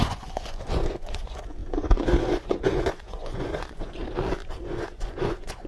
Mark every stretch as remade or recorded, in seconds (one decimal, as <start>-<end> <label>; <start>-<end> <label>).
0.0-4.0 remade; 4.0-4.6 recorded; 4.6-5.7 remade